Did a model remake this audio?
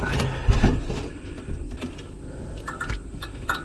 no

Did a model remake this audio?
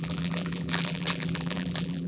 yes